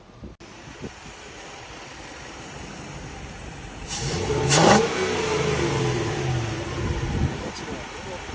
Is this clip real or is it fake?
real